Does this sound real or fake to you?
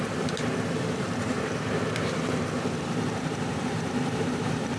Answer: fake